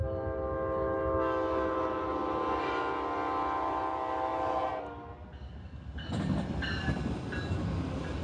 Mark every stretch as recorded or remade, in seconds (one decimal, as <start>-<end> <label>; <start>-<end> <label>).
0.0-8.2 recorded